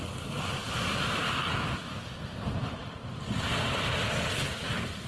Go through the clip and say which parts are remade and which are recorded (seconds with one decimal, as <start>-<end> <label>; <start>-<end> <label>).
0.0-5.1 recorded